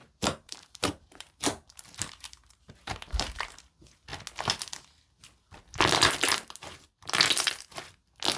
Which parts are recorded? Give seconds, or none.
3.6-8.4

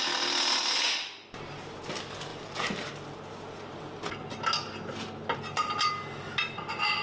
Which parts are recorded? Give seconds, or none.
0.0-2.3; 2.9-7.0

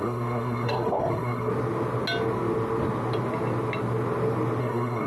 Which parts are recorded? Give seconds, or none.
1.5-4.6

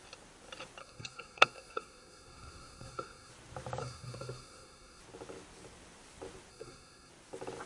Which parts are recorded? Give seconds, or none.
0.0-0.8; 3.3-3.8; 5.0-6.5; 7.1-7.7

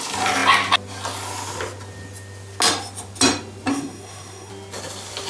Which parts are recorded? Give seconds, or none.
0.0-3.7; 4.5-5.3

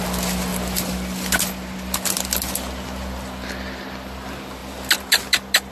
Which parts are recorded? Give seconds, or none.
0.0-5.7

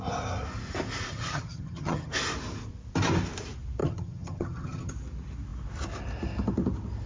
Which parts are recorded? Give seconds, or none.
0.0-1.1; 2.1-3.8; 4.9-7.1